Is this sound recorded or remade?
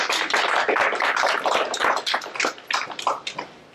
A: recorded